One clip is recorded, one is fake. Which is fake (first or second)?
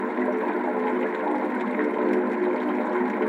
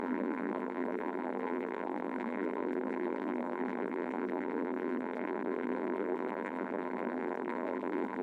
second